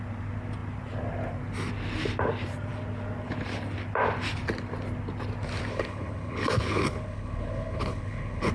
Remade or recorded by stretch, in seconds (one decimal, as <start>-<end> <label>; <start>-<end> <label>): 0.0-5.7 recorded; 5.7-8.5 remade